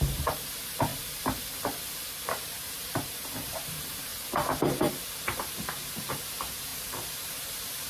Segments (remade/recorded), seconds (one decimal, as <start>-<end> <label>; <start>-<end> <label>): 0.0-0.9 remade; 0.9-2.1 recorded; 2.1-4.1 remade; 4.1-5.1 recorded; 5.1-7.9 remade